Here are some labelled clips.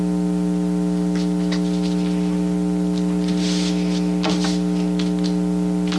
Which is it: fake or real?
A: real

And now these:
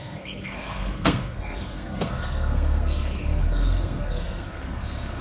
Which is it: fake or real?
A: fake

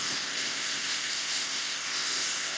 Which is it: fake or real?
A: fake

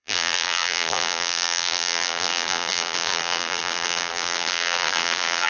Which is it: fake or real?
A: fake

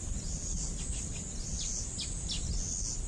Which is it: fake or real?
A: real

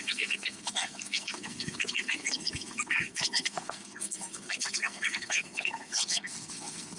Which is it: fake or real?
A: fake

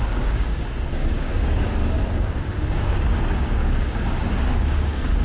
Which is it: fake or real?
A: fake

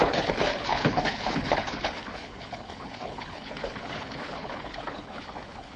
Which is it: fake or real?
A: fake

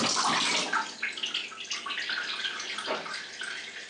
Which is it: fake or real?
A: real